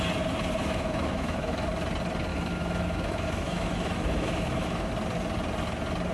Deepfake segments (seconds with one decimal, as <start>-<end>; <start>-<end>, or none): 0.6-1.7; 2.3-4.9